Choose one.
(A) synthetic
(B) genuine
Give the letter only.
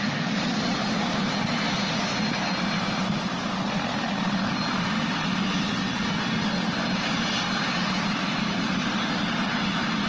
B